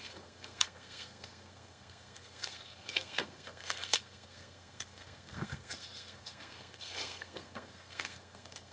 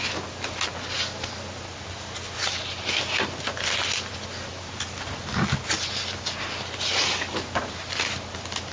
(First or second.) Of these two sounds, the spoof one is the first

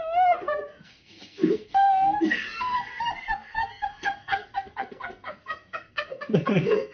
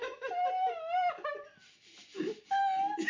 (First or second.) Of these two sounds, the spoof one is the first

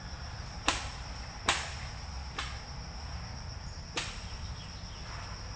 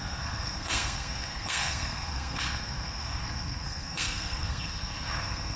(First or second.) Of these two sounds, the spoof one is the second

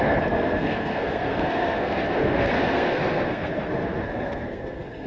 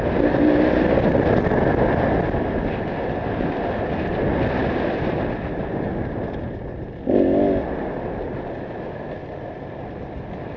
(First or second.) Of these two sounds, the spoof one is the first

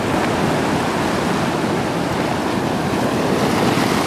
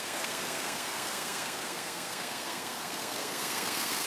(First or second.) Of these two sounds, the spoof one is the second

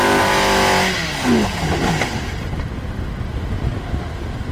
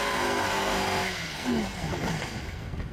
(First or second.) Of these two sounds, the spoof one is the second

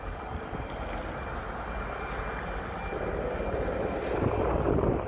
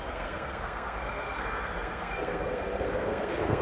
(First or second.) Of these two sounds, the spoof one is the second